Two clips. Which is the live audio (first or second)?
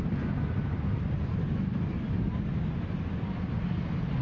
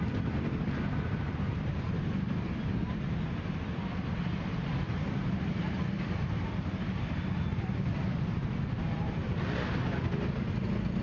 first